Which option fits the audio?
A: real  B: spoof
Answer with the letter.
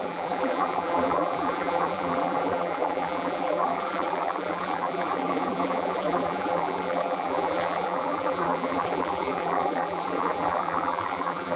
B